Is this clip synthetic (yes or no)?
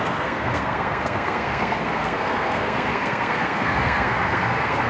yes